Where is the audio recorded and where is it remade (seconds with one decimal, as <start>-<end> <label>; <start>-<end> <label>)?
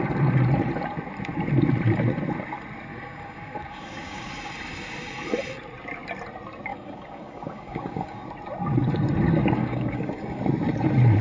0.0-2.9 recorded; 2.9-4.3 remade; 4.3-6.7 recorded; 6.7-8.3 remade; 8.3-9.6 recorded; 9.6-10.4 remade; 10.4-11.2 recorded